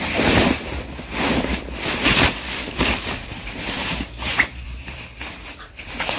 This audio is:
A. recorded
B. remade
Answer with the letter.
B